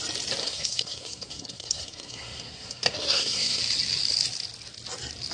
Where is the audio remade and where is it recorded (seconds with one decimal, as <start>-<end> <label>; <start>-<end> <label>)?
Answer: 0.0-0.4 recorded; 0.4-3.6 remade; 3.6-5.3 recorded